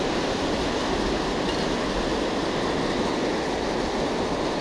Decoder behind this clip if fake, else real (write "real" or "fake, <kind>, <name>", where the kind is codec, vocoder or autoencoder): real